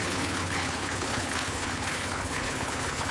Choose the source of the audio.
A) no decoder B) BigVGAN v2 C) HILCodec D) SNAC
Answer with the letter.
C